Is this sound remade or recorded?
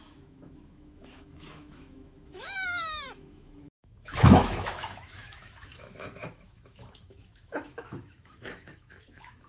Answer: remade